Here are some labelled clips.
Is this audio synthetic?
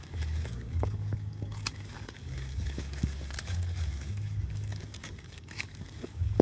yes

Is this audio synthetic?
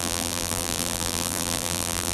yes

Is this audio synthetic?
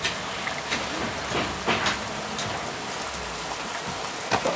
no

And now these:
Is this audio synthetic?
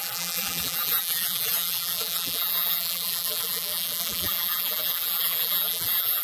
yes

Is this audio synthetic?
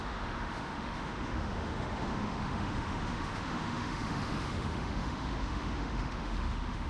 yes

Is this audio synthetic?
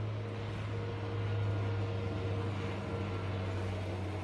no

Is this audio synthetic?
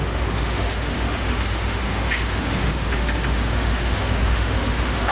yes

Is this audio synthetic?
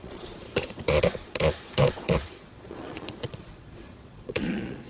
yes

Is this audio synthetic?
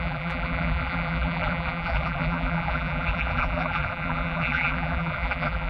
yes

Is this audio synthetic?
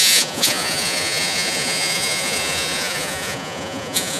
yes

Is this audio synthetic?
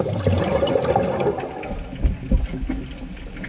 no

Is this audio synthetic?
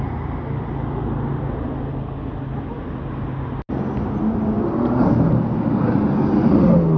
no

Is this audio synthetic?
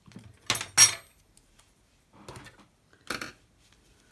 no